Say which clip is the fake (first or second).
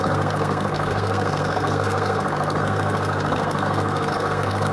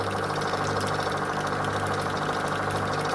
first